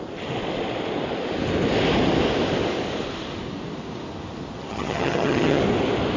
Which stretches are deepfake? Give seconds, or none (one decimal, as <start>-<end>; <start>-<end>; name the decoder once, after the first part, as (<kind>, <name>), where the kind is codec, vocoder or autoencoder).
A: 4.7-5.6 (vocoder, HiFi-GAN)